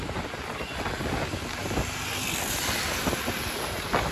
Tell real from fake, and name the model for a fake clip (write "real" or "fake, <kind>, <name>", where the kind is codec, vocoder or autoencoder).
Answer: real